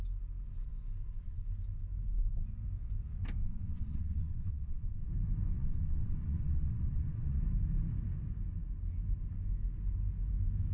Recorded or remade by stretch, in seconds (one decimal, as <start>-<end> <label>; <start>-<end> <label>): 0.0-3.4 recorded; 3.4-5.1 remade; 5.1-5.5 recorded; 5.5-7.4 remade; 7.4-10.7 recorded